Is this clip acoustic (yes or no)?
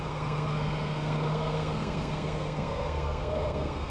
no